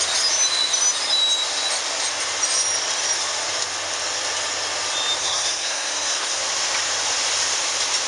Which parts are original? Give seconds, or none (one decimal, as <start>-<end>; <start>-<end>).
0.0-5.2; 6.4-8.1